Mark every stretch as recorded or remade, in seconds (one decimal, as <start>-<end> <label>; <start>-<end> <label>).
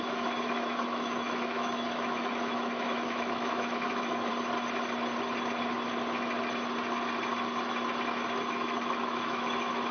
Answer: 0.0-4.3 remade; 4.3-8.5 recorded; 8.5-9.9 remade